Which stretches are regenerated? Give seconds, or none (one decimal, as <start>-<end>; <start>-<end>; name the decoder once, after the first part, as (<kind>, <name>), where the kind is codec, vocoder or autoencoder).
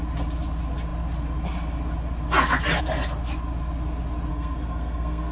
4.3-5.3 (codec, SNAC)